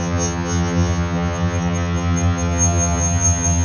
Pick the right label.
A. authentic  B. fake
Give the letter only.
B